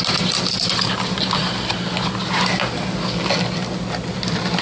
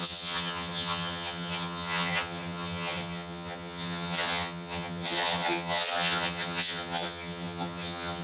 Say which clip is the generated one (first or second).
second